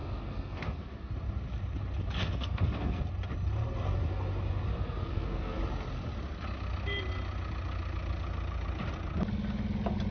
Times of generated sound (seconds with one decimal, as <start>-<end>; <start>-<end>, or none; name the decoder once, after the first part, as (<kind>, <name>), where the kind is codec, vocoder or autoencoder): 0.0-1.1 (codec, SNAC); 2.2-3.0; 4.7-5.6